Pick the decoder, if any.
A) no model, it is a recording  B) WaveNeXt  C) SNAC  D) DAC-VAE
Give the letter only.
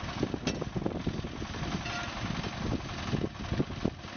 A